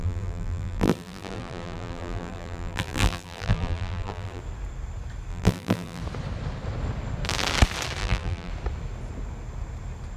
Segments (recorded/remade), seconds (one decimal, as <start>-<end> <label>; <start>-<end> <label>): 0.0-4.4 remade; 4.4-5.3 recorded; 5.3-6.0 remade; 6.0-8.0 recorded; 8.0-8.5 remade; 8.5-10.2 recorded